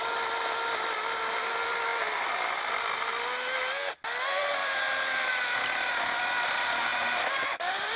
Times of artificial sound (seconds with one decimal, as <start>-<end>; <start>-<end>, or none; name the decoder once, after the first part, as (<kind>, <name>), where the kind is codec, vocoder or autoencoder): 4.4-5.3 (vocoder, BigVGAN v2); 6.9-8.0